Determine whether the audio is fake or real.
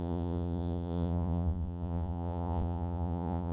fake